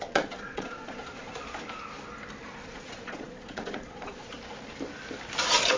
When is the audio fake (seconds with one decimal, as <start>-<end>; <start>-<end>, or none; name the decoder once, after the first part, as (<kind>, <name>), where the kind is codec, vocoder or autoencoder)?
0.0-1.3 (vocoder, Vocos); 2.4-4.3